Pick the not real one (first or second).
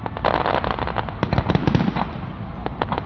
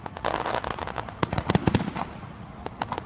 second